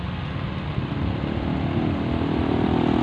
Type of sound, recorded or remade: recorded